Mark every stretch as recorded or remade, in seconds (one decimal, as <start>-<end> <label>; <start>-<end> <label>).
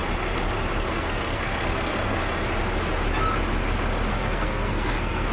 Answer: 0.0-0.9 recorded; 0.9-2.2 remade; 2.2-4.1 recorded; 4.1-5.3 remade